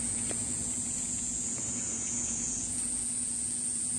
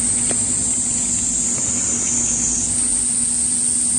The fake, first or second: first